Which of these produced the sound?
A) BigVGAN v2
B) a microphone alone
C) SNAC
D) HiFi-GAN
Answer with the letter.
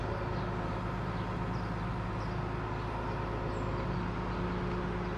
B